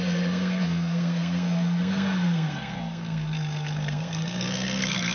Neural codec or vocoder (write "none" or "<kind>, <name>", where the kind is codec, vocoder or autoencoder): codec, SNAC